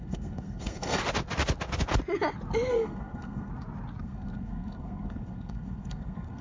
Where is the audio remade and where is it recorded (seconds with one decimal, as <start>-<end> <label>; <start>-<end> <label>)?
0.0-1.0 remade; 1.0-2.7 recorded; 2.7-3.5 remade; 3.5-4.0 recorded; 4.0-6.4 remade